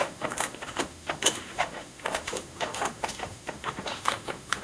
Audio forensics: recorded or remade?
remade